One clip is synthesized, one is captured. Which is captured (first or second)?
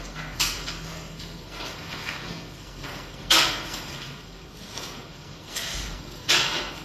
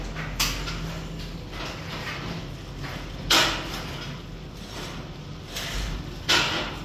second